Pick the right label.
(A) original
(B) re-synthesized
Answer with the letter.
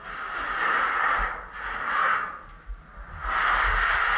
A